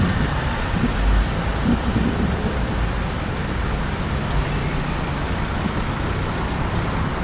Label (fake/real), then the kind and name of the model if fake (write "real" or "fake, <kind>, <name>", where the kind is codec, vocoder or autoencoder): fake, vocoder, BigVGAN v2